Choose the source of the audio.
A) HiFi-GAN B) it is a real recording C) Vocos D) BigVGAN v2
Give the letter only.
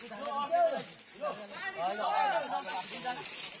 B